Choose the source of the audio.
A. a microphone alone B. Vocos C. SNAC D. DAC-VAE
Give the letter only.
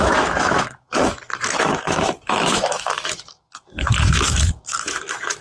D